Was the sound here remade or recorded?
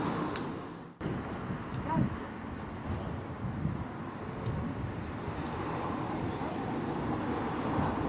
recorded